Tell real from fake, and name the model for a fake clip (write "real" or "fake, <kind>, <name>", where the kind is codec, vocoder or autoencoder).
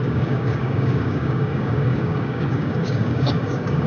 fake, codec, DAC